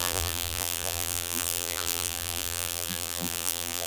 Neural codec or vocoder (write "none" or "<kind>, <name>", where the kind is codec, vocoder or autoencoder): vocoder, BigVGAN v2